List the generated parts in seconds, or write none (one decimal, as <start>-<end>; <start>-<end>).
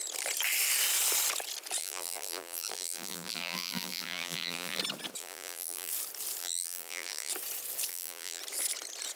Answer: 1.8-4.8; 5.2-5.9; 6.4-7.3; 7.9-8.4